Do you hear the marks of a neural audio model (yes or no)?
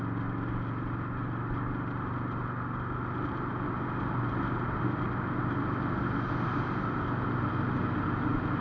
no